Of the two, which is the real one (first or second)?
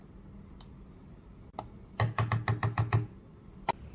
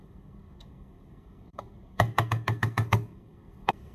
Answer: first